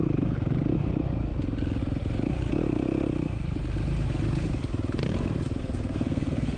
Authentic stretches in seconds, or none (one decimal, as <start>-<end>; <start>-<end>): 0.0-5.6